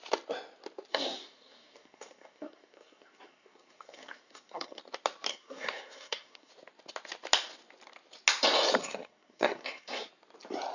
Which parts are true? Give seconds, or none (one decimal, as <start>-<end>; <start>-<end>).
0.0-0.9; 4.8-5.3; 6.5-8.8; 10.1-10.7